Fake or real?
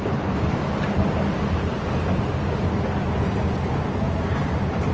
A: real